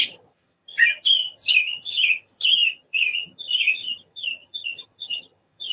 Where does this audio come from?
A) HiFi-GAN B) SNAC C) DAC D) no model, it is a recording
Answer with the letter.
A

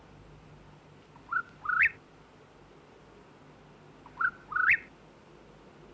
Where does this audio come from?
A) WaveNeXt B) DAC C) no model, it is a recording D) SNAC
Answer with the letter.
C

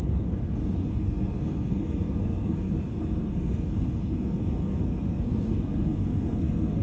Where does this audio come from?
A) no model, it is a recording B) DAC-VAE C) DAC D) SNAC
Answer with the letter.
D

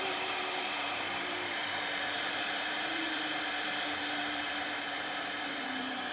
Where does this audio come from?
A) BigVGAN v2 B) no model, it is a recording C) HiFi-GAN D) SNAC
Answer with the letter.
A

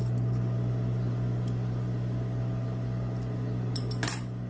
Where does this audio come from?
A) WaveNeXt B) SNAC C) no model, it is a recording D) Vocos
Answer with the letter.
C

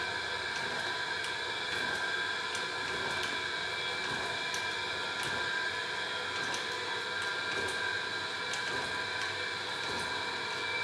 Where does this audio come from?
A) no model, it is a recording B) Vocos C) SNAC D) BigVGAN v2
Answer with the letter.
A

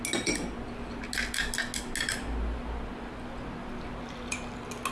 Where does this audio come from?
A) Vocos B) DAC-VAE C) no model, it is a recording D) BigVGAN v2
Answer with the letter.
C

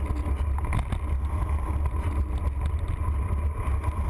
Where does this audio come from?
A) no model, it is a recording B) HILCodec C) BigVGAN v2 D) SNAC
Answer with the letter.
A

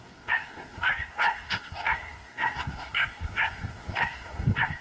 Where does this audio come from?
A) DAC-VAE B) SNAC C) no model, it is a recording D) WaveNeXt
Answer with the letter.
B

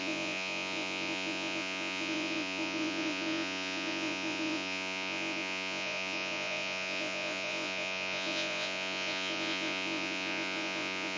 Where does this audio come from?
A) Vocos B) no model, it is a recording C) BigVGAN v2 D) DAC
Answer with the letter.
A